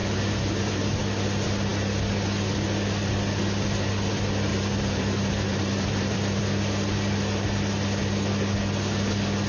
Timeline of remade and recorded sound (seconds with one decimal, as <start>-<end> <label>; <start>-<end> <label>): 0.0-1.0 remade; 1.0-4.5 recorded; 4.5-6.4 remade; 6.4-9.5 recorded